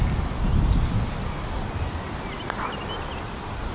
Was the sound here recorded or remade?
recorded